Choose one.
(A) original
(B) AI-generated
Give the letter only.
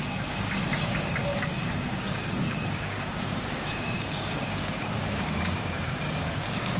B